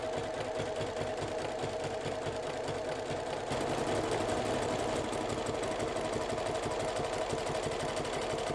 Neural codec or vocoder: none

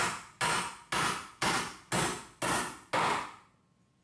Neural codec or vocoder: none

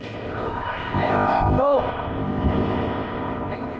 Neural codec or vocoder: codec, ZipCodec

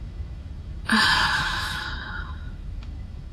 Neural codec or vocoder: autoencoder, DAC-VAE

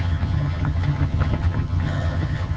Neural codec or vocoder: vocoder, HiFi-GAN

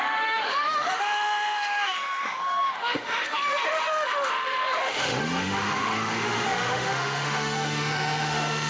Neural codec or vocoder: autoencoder, DAC-VAE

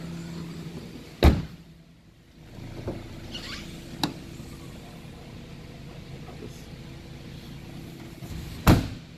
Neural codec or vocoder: none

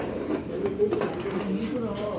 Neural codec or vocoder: none